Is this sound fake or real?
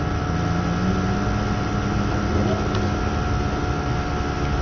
real